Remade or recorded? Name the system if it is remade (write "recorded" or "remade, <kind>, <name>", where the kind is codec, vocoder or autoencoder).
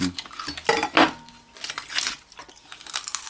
recorded